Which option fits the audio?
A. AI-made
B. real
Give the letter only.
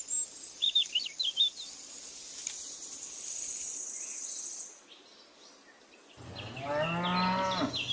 B